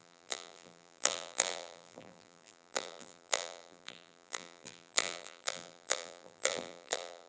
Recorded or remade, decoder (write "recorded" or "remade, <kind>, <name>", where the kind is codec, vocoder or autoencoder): remade, vocoder, BigVGAN v2